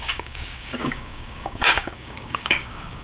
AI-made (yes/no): yes